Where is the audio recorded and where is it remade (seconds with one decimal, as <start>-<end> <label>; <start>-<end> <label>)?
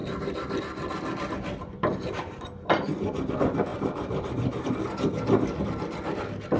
0.0-1.6 recorded; 1.6-3.3 remade; 3.3-3.7 recorded; 3.7-4.7 remade; 4.7-6.6 recorded